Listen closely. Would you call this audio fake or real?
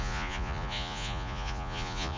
fake